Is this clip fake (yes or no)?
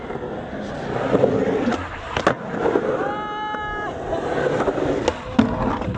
no